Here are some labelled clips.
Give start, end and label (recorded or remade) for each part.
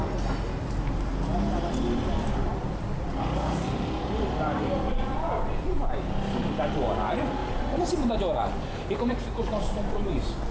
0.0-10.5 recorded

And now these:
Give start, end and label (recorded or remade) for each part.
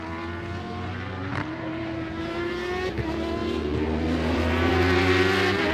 0.0-0.9 recorded; 0.9-2.5 remade; 2.5-3.4 recorded; 3.4-4.7 remade; 4.7-5.7 recorded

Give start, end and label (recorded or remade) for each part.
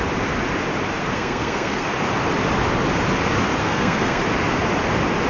0.0-1.0 recorded; 1.0-1.9 remade; 1.9-3.6 recorded; 3.6-4.2 remade; 4.2-5.3 recorded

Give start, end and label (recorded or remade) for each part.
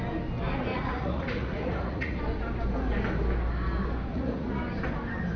0.0-0.7 recorded; 0.7-2.2 remade; 2.2-4.1 recorded; 4.1-4.6 remade; 4.6-5.4 recorded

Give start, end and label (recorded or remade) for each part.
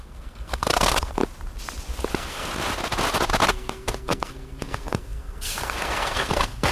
0.0-1.2 remade; 1.2-2.1 recorded; 2.1-2.5 remade; 2.5-3.5 recorded; 3.5-6.7 remade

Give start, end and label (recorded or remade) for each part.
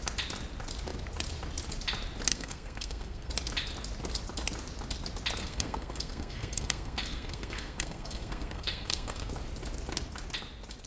0.0-2.3 recorded; 2.3-3.3 remade; 3.3-5.4 recorded; 5.4-9.3 remade; 9.3-10.9 recorded